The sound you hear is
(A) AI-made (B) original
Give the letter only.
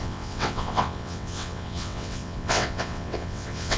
A